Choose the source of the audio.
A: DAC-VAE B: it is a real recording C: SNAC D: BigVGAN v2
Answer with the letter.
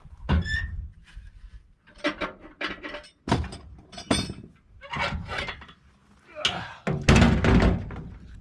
B